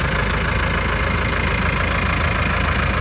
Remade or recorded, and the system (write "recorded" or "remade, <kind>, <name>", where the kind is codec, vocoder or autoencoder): recorded